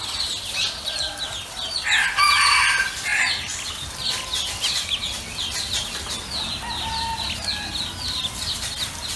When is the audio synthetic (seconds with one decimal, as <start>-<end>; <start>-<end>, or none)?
none